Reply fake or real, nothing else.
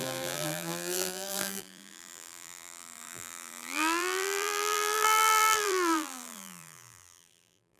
fake